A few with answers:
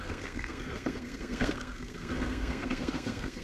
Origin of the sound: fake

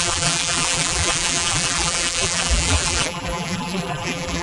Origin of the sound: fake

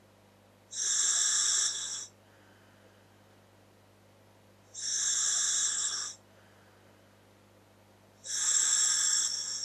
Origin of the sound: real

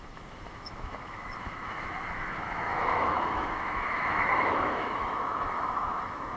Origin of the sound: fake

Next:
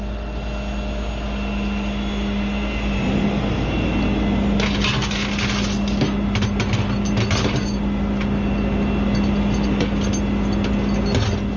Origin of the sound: real